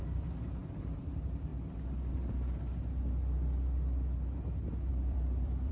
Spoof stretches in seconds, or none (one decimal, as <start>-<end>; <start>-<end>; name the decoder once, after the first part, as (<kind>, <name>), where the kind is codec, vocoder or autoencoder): 0.0-1.5 (vocoder, BigVGAN v2); 4.9-5.7